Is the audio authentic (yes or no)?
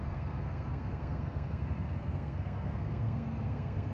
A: no